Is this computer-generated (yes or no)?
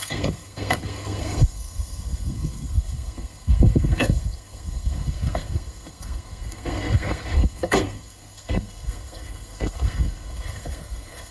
yes